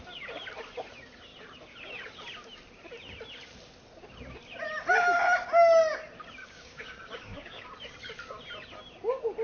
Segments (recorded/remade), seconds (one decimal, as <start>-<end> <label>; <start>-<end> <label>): 0.0-6.4 recorded; 6.4-7.6 remade; 7.6-9.4 recorded